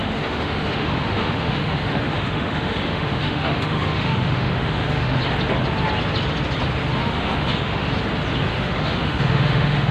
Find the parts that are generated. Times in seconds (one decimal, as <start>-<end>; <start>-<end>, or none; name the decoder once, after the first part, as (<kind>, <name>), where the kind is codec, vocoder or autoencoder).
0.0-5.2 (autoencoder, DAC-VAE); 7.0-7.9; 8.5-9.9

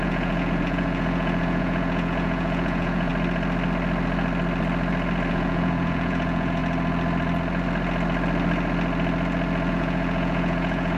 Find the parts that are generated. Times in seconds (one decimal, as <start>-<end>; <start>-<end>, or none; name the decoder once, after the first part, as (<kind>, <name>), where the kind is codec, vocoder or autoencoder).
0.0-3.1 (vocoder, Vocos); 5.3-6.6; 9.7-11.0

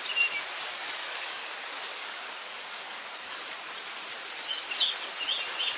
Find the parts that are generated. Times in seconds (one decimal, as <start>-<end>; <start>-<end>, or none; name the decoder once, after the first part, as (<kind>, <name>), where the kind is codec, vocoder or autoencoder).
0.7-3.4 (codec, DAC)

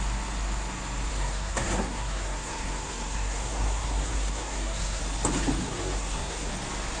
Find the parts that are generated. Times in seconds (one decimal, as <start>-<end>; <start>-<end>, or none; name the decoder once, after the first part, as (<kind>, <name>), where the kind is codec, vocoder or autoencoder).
1.1-5.0 (codec, SNAC); 5.6-6.5